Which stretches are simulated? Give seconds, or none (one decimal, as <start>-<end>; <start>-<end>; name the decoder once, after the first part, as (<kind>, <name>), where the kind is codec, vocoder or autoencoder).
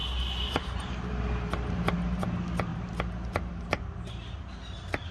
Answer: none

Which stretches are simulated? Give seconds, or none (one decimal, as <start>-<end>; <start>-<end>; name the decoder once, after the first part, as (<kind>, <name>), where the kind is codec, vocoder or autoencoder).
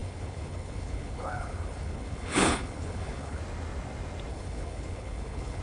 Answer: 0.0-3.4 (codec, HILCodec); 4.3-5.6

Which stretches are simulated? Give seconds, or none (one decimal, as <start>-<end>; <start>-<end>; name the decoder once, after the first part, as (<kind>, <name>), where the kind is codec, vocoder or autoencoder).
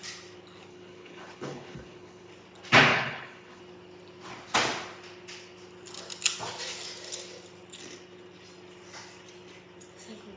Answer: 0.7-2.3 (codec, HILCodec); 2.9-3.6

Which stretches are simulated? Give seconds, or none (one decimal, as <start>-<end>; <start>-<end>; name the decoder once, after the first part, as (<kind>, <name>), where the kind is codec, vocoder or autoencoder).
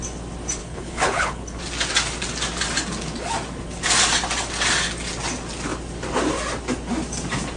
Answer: 0.6-1.6 (codec, HILCodec)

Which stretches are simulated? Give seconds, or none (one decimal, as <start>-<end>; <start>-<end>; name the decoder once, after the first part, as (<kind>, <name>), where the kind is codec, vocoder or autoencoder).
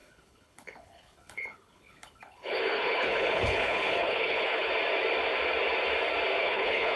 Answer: 0.0-4.7 (codec, HILCodec); 6.4-7.0